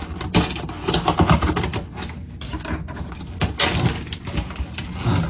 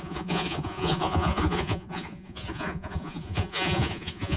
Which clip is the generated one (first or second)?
second